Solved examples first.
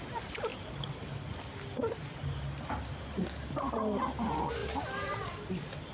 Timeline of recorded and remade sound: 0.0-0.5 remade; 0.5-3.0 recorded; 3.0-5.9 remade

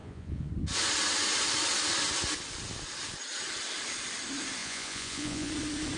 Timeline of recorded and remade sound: 0.0-0.5 remade; 0.5-4.6 recorded; 4.6-5.5 remade; 5.5-6.0 recorded

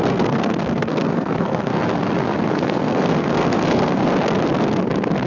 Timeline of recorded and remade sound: 0.0-1.7 remade; 1.7-2.5 recorded; 2.5-4.0 remade; 4.0-5.3 recorded